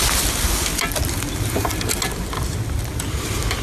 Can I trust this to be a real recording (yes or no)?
yes